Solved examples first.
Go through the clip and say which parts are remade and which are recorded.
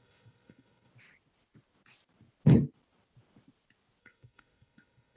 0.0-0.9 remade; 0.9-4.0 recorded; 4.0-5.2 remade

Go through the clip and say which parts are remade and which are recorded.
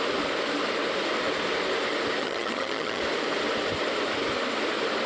0.0-2.2 recorded; 2.2-3.0 remade; 3.0-5.1 recorded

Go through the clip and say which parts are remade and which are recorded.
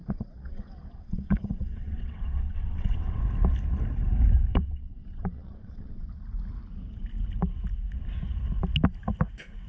0.0-3.2 remade; 3.2-4.5 recorded; 4.5-6.1 remade; 6.1-9.7 recorded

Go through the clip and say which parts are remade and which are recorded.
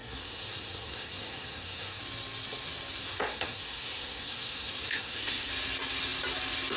0.0-2.0 remade; 2.0-3.0 recorded; 3.0-5.5 remade; 5.5-6.8 recorded